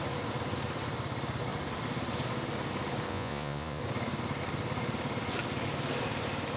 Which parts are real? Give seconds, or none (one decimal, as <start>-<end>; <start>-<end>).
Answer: 0.0-3.1; 3.8-6.6